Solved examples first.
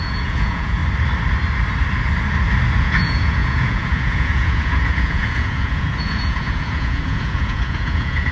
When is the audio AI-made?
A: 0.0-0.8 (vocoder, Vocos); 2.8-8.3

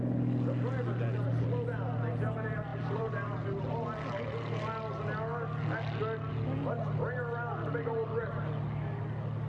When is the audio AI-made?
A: 2.7-3.6 (vocoder, BigVGAN v2)

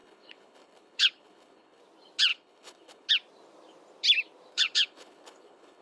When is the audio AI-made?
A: 0.0-1.8 (codec, HILCodec); 2.3-3.1; 4.5-5.8

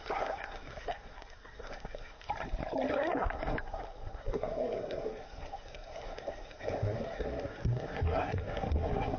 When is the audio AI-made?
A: 0.0-2.3 (codec, SNAC); 2.9-9.2

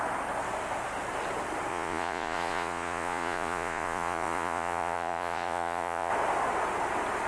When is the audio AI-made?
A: 1.7-6.1 (vocoder, Vocos)

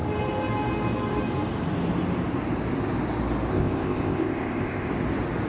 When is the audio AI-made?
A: 3.5-4.9 (codec, ZipCodec)